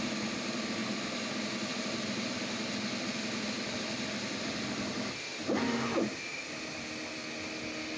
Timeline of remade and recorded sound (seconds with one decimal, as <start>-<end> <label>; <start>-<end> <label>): 0.0-8.0 recorded